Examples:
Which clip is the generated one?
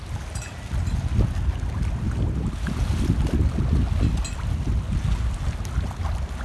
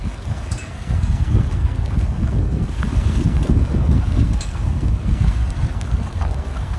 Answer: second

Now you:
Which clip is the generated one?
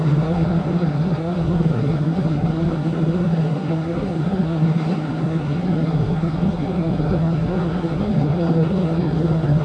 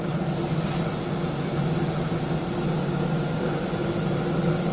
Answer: first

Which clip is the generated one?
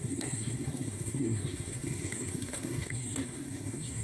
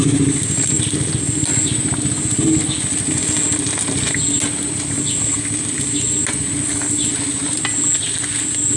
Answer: first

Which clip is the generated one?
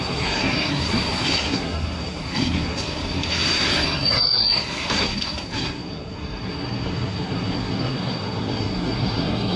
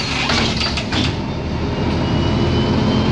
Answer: first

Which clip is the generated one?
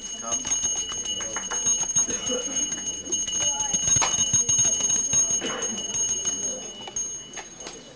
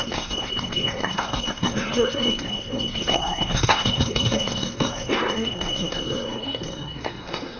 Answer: second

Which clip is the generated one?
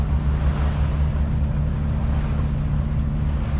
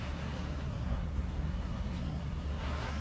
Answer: second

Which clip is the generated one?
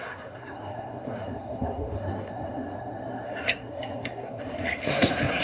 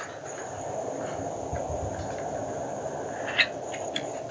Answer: first